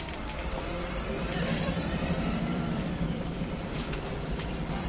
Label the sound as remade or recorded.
remade